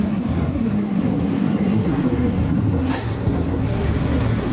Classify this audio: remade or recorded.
remade